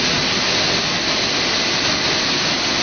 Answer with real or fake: real